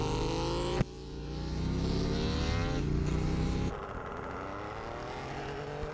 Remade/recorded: recorded